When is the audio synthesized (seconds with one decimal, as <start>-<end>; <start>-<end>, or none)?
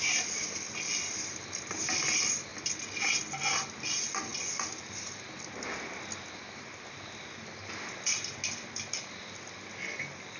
none